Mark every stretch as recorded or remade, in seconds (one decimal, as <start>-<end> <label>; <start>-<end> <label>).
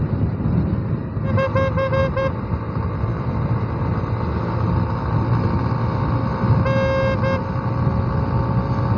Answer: 0.0-9.0 recorded